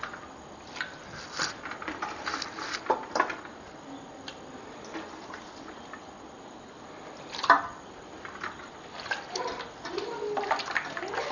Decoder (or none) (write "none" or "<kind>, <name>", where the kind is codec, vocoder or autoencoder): none